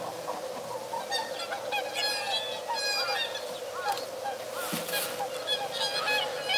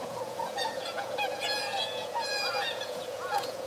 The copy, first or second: second